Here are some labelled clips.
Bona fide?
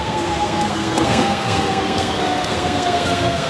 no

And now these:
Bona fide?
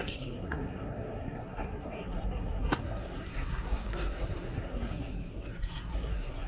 no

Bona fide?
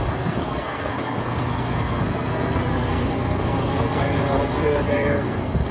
no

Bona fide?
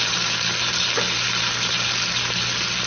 yes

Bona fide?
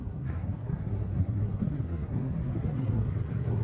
no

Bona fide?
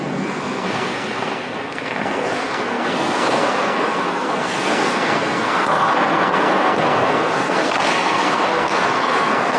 no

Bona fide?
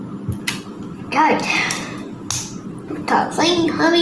yes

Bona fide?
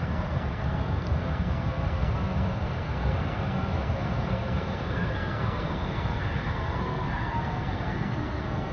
no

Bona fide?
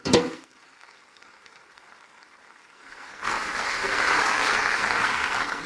no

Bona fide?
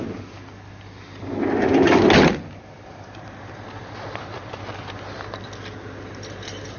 yes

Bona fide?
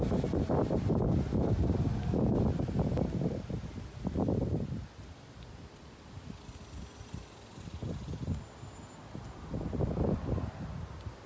yes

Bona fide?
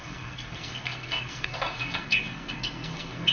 no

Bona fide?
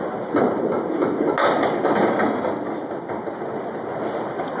yes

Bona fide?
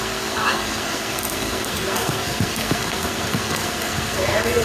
no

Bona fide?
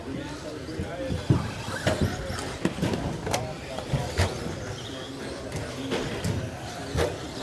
yes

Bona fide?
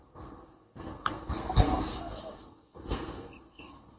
no